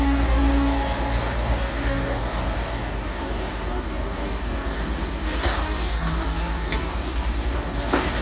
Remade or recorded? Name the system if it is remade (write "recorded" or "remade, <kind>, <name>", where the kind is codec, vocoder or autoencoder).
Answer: remade, codec, DAC